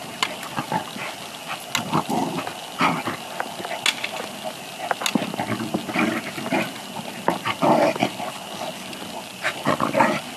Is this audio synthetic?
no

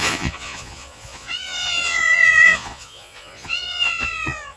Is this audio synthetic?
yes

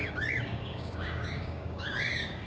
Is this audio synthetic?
yes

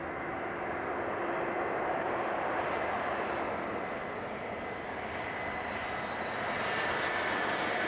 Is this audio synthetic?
no